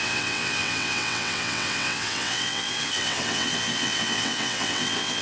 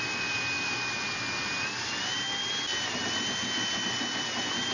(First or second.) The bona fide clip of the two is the second